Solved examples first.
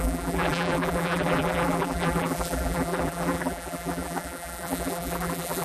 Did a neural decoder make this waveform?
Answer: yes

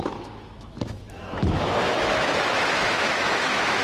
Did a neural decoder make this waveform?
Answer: yes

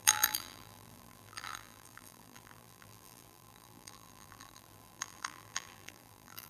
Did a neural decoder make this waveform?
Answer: yes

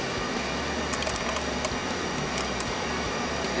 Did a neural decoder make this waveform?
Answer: no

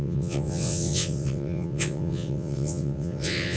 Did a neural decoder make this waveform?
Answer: yes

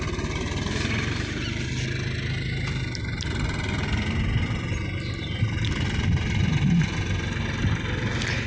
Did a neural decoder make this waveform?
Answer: no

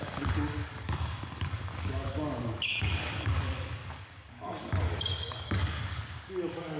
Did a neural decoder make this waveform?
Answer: yes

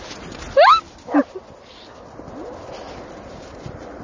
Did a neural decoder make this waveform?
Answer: no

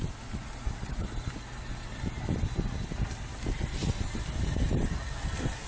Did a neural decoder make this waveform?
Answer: no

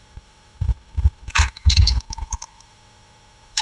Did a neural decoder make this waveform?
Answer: yes